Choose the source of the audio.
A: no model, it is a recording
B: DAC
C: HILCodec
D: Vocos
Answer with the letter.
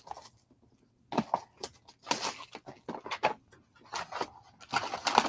A